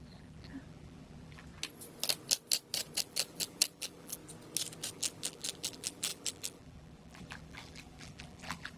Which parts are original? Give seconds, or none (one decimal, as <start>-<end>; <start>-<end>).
1.5-3.0; 4.2-4.9